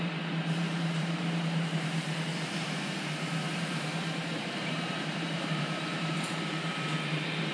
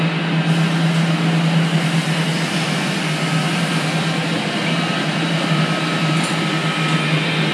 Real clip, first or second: second